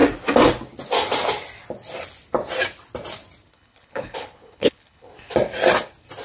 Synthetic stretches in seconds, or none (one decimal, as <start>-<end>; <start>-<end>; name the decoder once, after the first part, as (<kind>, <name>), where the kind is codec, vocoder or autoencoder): 3.5-5.1 (codec, HILCodec)

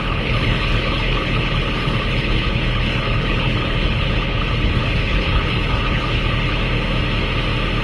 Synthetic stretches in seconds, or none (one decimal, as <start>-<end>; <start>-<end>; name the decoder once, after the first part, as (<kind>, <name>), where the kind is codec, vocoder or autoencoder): 0.0-6.6 (codec, HILCodec)

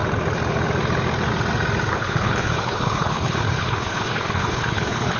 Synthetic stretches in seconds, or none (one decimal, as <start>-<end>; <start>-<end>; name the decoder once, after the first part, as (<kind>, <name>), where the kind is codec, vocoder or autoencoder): 1.9-5.2 (codec, HILCodec)